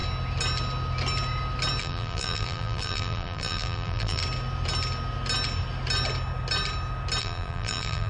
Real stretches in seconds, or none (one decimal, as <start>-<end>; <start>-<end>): 0.0-1.8; 4.2-7.2